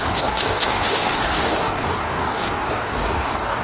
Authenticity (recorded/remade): remade